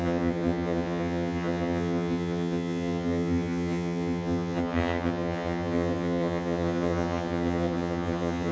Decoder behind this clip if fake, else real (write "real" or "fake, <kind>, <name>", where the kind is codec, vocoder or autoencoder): fake, vocoder, HiFi-GAN